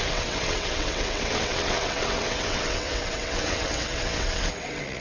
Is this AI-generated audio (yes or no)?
yes